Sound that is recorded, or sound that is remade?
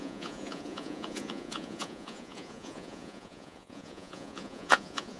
remade